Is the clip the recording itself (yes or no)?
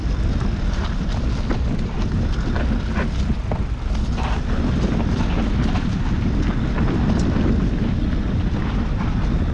yes